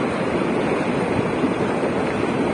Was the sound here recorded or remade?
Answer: recorded